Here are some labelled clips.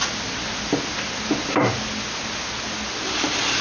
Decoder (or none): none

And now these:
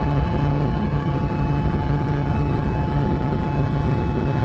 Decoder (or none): vocoder, HiFi-GAN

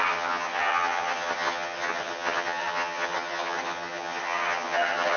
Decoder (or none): vocoder, HiFi-GAN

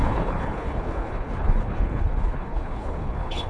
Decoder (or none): codec, HILCodec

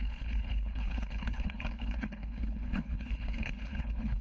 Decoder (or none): codec, HILCodec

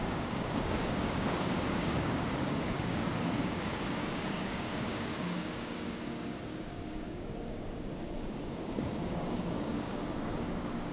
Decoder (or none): codec, DAC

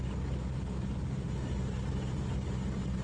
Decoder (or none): none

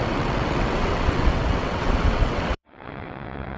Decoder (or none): vocoder, WaveNeXt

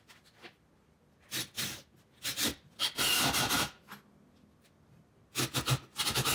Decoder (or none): none